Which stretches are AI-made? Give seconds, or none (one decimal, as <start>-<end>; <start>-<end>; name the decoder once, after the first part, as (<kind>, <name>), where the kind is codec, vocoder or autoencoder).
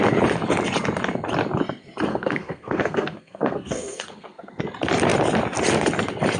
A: 2.1-4.6 (codec, SNAC)